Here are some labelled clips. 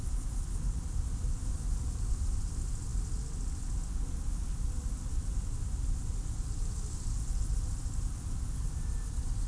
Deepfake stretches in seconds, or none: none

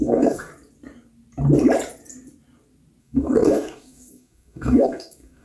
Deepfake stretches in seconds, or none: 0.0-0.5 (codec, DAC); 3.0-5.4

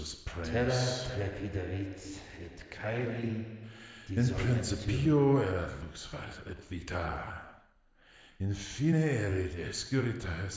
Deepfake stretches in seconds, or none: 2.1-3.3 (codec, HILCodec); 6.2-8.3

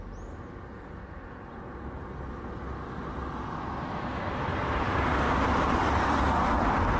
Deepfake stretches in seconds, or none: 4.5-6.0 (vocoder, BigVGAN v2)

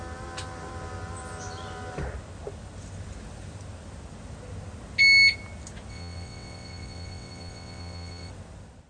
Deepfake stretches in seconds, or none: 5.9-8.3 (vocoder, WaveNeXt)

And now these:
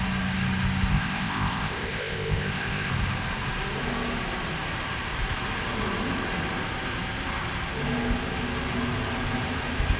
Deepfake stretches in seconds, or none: 0.9-2.9 (codec, ZipCodec)

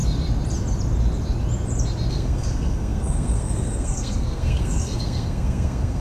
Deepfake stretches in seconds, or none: 2.1-6.0 (codec, SNAC)